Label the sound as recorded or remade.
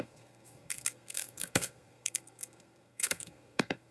remade